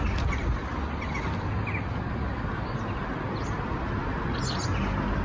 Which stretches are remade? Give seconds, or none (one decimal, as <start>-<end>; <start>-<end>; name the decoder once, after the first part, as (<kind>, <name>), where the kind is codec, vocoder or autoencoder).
none